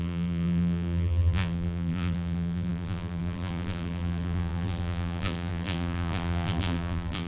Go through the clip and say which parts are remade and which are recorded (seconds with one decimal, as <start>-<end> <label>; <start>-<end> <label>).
0.0-7.3 remade